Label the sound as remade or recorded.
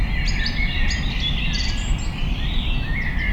recorded